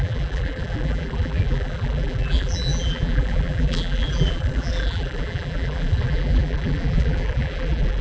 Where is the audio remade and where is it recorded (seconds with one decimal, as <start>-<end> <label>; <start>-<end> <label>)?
0.0-8.0 remade